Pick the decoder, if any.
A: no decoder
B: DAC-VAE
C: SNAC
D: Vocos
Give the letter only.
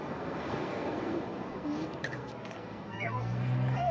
C